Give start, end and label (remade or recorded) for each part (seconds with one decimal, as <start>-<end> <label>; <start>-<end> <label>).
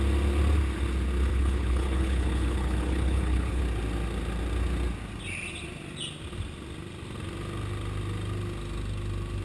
0.0-1.3 recorded; 1.3-3.6 remade; 3.6-9.4 recorded